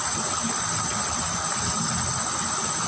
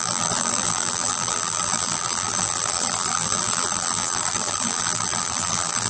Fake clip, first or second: second